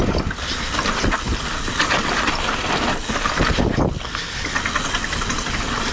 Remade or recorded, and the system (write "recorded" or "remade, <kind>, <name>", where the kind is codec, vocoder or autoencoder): recorded